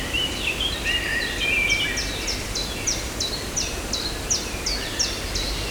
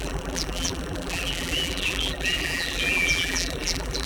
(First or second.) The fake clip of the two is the second